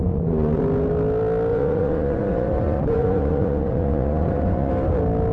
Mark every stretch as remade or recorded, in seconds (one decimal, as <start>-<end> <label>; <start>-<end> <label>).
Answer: 0.0-0.6 remade; 0.6-1.5 recorded; 1.5-4.7 remade; 4.7-5.3 recorded